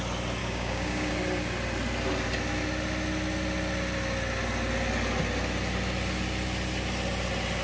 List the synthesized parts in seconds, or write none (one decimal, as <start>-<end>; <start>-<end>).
0.4-1.1